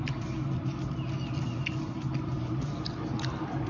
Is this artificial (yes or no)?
no